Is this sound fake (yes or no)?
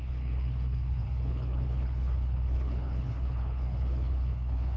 yes